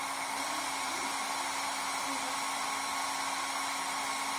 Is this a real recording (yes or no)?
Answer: yes